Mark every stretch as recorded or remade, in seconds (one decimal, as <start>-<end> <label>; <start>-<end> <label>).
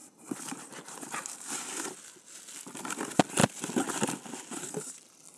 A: 0.0-1.7 remade; 1.7-5.4 recorded